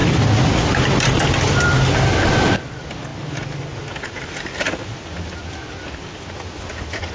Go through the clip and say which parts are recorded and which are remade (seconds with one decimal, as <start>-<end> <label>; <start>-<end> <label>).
0.0-7.1 remade